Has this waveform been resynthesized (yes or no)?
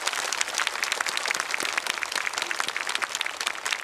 no